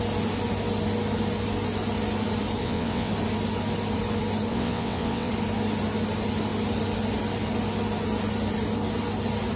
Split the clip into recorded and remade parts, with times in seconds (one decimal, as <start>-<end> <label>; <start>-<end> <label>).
0.0-2.6 recorded; 2.6-3.1 remade; 3.1-4.5 recorded; 4.5-5.3 remade; 5.3-9.6 recorded